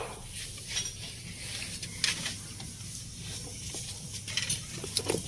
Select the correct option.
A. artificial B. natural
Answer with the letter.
B